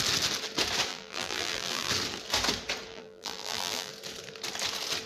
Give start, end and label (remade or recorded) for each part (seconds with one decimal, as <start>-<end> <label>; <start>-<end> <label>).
0.0-0.9 recorded; 0.9-1.9 remade; 1.9-2.9 recorded; 2.9-3.9 remade; 3.9-5.1 recorded